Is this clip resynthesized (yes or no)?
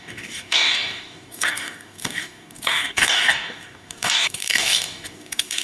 yes